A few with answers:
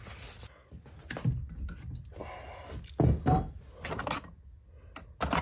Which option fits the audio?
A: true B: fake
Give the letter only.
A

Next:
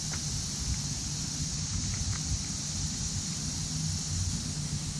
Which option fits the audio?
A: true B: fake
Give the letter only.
A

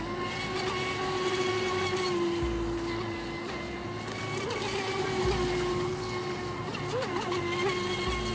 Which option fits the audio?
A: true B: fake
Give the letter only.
A